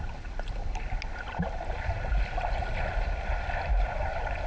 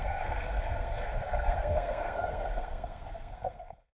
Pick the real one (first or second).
first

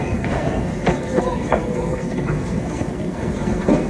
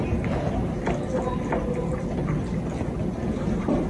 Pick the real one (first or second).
second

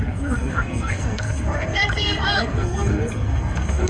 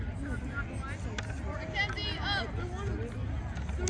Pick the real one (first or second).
second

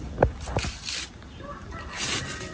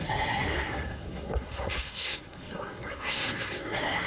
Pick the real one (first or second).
first